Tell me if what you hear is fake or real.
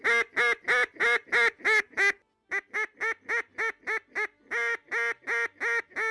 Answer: real